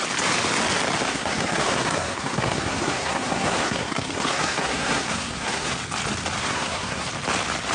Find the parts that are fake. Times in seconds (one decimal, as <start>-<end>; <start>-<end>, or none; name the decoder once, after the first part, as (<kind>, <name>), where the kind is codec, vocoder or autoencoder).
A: 1.1-5.7 (codec, SNAC); 6.4-7.1